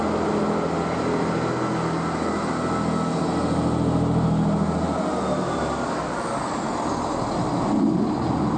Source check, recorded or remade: recorded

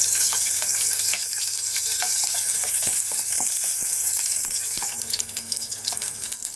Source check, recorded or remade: remade